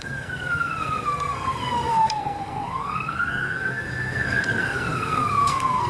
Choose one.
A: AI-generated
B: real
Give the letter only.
A